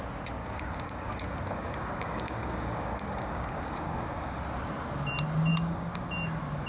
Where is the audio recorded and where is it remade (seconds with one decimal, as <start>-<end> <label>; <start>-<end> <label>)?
0.0-0.4 recorded; 0.4-4.4 remade; 4.4-5.5 recorded; 5.5-6.1 remade; 6.1-6.7 recorded